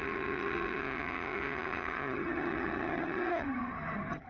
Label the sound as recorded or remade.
remade